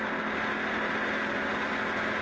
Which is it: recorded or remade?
recorded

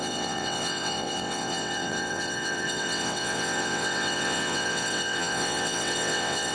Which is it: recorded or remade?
remade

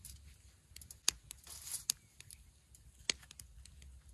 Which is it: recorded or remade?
recorded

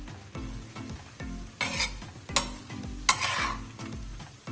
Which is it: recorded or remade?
recorded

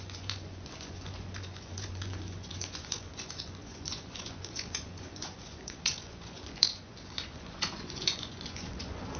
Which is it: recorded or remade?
remade